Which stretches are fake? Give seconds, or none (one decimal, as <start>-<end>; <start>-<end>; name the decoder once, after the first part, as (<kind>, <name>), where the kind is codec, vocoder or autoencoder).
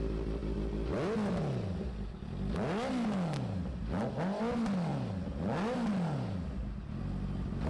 none